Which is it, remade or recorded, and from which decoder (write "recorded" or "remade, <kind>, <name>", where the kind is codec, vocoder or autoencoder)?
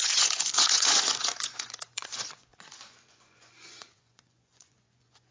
remade, vocoder, Vocos